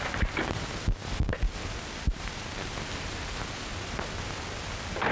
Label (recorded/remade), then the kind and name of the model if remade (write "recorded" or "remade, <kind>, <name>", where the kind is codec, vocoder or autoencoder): recorded